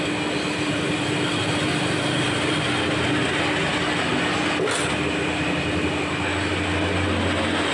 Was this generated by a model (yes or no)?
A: no